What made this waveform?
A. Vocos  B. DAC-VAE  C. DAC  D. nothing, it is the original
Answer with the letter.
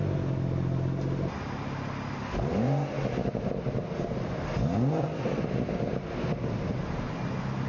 D